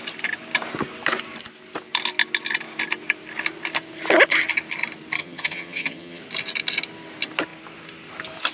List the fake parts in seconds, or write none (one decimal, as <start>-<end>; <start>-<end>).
5.2-6.2